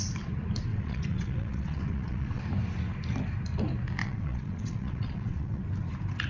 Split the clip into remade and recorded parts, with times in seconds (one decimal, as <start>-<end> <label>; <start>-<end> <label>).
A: 0.0-0.7 recorded; 0.7-2.4 remade; 2.4-4.0 recorded; 4.0-5.6 remade; 5.6-6.3 recorded